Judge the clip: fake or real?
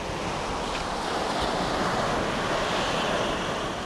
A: real